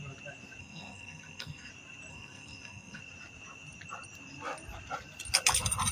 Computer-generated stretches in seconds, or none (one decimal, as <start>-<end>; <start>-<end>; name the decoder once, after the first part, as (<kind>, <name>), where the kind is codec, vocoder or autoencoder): 0.6-1.7 (codec, SNAC); 2.1-3.0